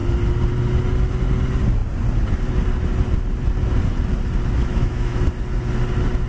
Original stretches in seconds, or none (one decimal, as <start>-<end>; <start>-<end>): 0.0-4.6; 5.2-6.3